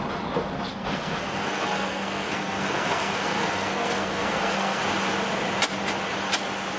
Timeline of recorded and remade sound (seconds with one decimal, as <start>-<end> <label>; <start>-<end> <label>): 0.0-0.7 recorded; 0.7-4.8 remade; 4.8-6.8 recorded